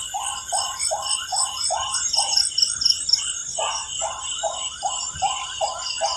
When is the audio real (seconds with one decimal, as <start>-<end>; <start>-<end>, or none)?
0.0-1.3; 2.4-6.2